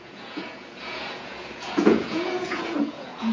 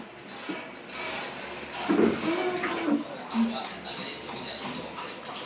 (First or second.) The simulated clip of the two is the first